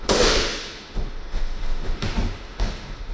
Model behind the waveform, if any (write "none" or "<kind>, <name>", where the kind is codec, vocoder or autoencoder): autoencoder, DAC-VAE